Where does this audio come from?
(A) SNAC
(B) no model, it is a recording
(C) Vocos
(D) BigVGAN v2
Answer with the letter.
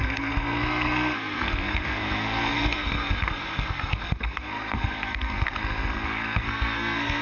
A